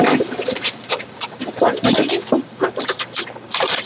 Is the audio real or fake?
fake